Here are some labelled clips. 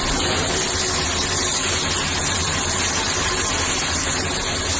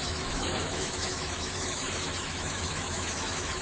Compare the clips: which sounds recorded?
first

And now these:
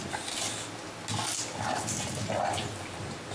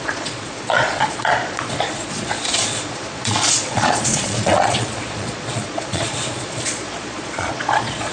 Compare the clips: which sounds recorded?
first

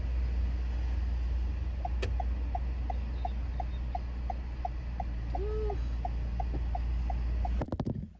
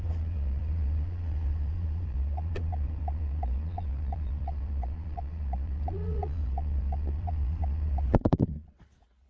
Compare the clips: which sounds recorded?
first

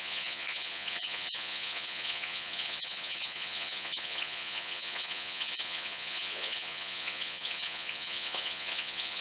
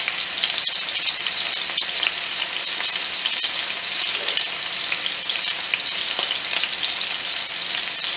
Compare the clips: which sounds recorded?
second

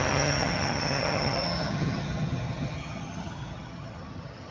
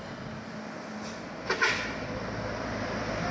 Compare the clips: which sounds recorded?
second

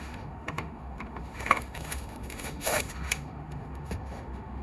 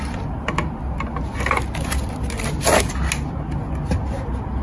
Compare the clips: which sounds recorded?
second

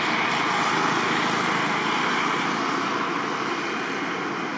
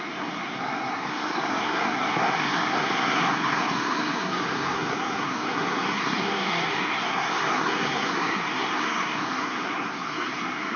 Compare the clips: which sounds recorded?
first